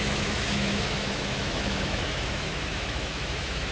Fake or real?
fake